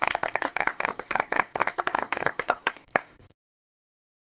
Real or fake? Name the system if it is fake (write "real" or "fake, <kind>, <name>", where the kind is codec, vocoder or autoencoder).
fake, codec, SNAC